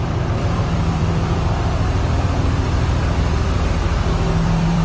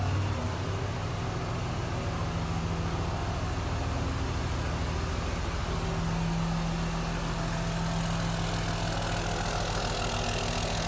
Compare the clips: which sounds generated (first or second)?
first